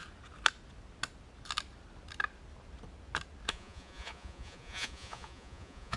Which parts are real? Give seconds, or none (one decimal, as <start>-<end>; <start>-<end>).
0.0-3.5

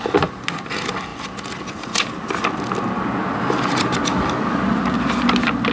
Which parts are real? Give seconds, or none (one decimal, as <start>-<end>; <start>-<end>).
0.0-5.7

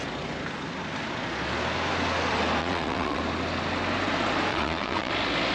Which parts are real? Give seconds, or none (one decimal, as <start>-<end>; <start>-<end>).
0.0-2.6; 3.2-4.5; 5.1-5.5